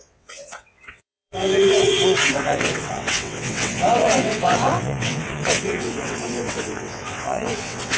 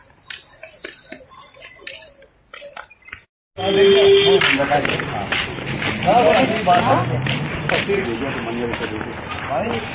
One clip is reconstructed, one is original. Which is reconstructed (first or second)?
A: first